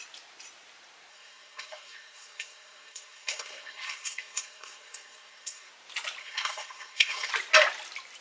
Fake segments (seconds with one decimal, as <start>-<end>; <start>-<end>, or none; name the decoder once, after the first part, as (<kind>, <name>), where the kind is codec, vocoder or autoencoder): 1.1-5.7 (codec, SNAC); 6.2-7.3